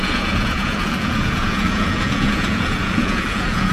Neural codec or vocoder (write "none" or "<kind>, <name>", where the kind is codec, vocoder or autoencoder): vocoder, Vocos